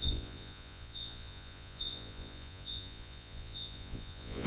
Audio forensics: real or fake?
fake